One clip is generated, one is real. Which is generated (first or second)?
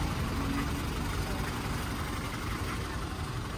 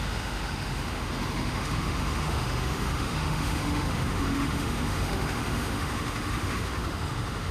second